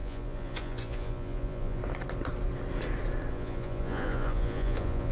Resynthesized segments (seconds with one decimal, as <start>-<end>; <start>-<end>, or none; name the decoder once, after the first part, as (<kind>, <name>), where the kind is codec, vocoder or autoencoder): 0.0-1.8 (vocoder, Vocos); 3.3-5.1